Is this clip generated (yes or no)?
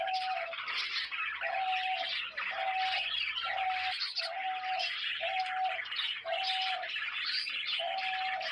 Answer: no